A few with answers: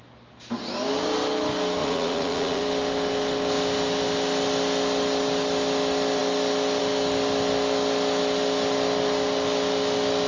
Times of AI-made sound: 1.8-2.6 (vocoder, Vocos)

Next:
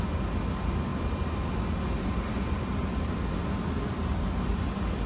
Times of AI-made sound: none

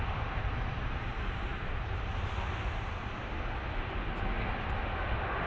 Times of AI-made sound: 1.5-2.1 (vocoder, BigVGAN v2)

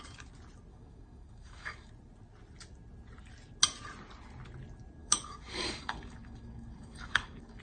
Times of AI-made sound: 0.7-1.9 (codec, DAC); 5.0-7.6

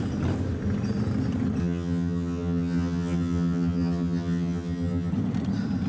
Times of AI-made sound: 1.6-5.1 (vocoder, HiFi-GAN)

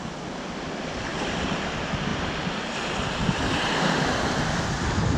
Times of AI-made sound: 1.1-1.6 (vocoder, BigVGAN v2)

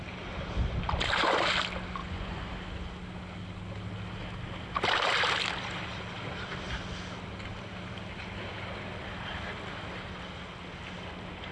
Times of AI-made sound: 2.0-2.5 (vocoder, Vocos)